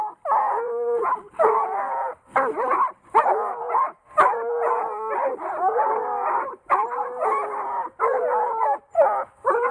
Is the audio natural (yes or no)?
no